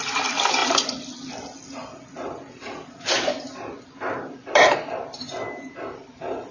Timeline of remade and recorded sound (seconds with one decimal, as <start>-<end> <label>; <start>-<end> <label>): 0.0-6.5 recorded